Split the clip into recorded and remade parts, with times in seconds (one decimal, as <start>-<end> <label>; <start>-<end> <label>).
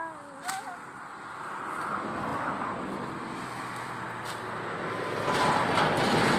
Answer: 0.0-6.4 recorded